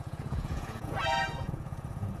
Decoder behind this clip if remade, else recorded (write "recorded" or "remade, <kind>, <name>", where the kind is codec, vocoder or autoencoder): remade, vocoder, Vocos